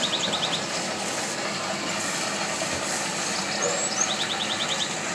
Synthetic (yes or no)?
no